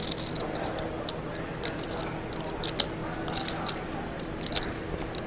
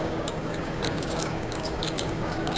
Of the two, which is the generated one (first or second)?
second